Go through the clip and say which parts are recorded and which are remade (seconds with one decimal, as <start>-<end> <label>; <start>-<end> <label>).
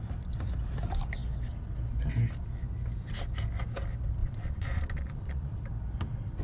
0.0-4.2 recorded; 4.2-5.5 remade; 5.5-6.4 recorded